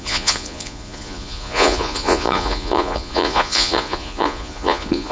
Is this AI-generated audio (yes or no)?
yes